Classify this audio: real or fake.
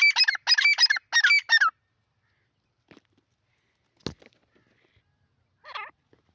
real